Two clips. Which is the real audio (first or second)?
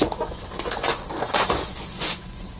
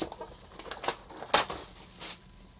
second